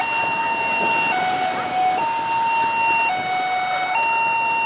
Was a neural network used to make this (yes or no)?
no